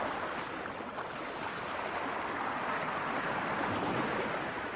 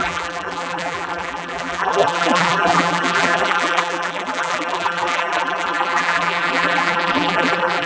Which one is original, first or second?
first